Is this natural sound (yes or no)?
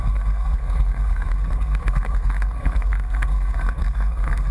no